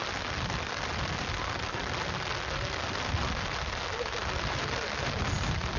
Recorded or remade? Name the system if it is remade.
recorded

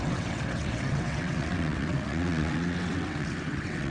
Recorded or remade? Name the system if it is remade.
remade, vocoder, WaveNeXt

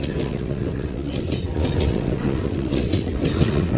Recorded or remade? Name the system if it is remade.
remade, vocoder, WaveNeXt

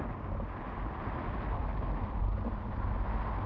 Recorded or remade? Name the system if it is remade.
recorded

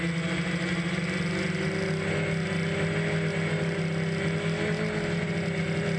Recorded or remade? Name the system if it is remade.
recorded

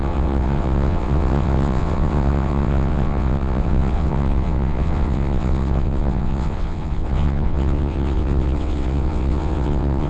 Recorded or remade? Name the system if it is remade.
remade, vocoder, WaveNeXt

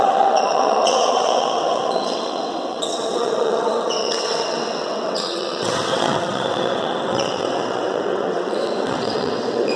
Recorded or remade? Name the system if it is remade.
remade, vocoder, WaveNeXt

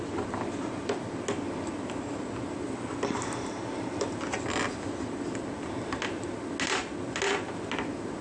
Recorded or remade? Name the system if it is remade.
recorded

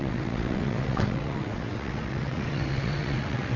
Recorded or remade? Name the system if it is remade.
remade, vocoder, WaveNeXt